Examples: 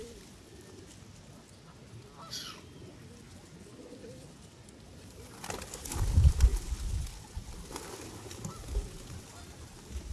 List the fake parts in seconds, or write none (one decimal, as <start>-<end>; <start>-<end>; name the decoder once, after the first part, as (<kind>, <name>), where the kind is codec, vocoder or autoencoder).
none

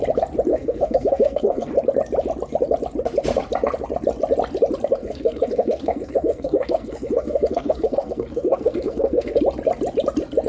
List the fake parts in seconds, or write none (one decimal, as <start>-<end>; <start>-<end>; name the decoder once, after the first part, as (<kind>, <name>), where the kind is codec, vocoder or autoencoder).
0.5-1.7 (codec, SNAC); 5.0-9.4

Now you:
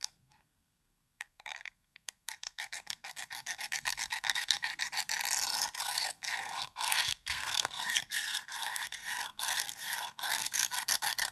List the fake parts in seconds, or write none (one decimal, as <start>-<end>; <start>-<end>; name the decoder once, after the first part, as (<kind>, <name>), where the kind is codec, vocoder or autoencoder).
0.0-4.7 (codec, SNAC); 5.8-11.3

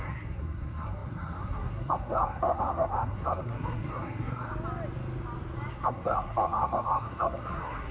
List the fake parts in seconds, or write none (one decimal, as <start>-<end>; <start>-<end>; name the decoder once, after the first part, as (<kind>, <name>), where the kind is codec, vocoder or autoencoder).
0.0-4.5 (codec, SNAC); 5.7-7.9

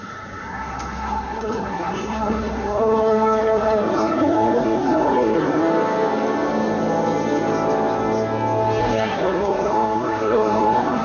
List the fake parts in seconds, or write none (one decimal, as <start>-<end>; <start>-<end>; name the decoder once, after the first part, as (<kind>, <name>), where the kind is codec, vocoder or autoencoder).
0.0-5.6 (codec, SNAC); 8.8-11.0